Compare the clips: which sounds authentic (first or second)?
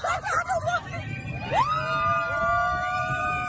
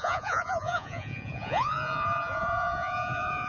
first